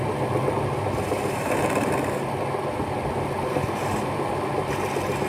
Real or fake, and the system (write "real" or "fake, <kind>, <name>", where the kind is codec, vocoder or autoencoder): real